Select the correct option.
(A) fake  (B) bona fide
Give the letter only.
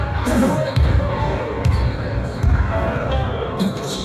A